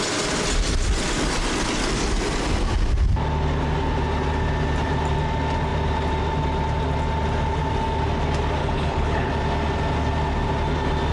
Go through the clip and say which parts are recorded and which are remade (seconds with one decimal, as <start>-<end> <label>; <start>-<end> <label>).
0.0-8.6 recorded; 8.6-9.3 remade; 9.3-11.1 recorded